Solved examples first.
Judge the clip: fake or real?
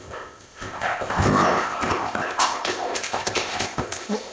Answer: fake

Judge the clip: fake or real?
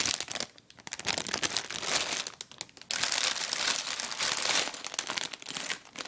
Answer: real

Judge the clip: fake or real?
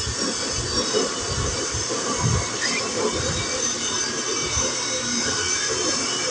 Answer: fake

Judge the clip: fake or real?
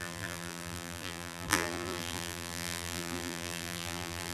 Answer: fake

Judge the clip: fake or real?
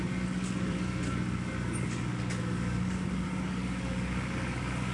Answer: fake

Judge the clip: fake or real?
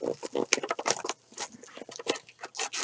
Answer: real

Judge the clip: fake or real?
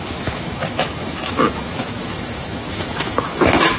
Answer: fake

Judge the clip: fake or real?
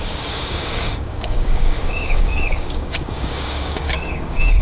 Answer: fake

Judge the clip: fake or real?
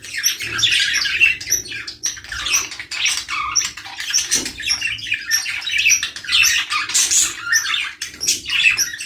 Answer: real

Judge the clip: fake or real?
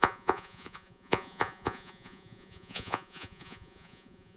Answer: fake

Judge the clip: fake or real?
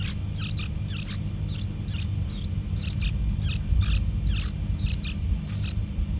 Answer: real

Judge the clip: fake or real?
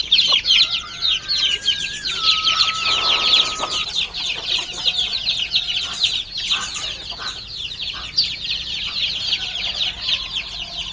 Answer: real